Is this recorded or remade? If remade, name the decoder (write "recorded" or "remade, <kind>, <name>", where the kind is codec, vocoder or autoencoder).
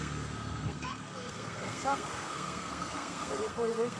remade, codec, SNAC